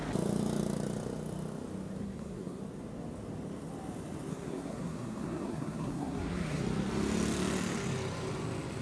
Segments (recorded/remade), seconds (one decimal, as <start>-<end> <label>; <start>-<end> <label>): 0.0-2.0 recorded; 2.0-2.6 remade; 2.6-4.3 recorded; 4.3-6.6 remade; 6.6-8.8 recorded